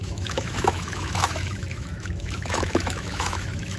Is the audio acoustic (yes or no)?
no